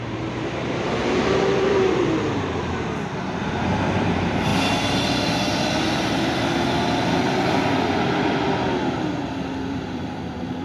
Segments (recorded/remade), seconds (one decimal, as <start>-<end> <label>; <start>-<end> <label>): 0.0-4.5 remade; 4.5-9.7 recorded; 9.7-10.6 remade